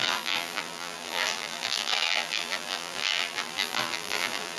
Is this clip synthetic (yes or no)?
yes